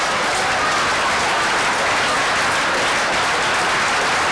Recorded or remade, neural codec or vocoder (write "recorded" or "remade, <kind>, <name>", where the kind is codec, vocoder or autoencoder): recorded